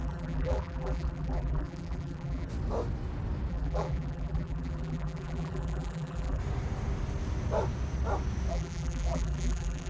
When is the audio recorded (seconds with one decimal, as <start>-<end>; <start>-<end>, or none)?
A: 2.5-3.5; 6.4-8.5